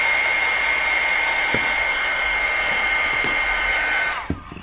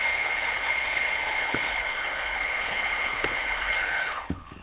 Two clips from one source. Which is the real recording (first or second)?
first